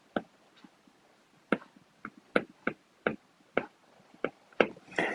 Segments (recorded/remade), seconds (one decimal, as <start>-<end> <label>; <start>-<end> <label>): 0.0-5.1 recorded